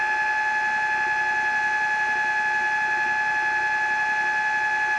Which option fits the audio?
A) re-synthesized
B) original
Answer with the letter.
B